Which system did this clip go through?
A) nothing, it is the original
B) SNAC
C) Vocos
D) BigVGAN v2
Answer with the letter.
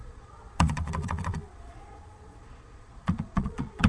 C